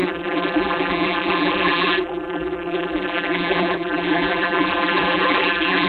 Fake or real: fake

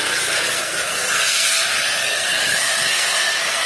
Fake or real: fake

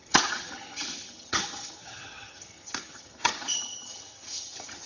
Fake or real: fake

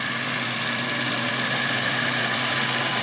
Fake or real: fake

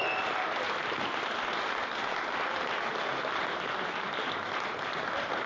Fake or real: real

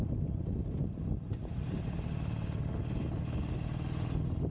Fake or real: real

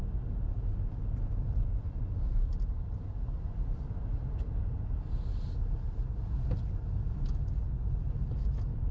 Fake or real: real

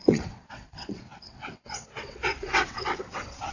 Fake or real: fake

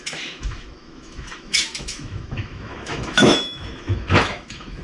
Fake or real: fake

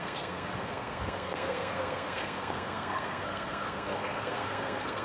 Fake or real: fake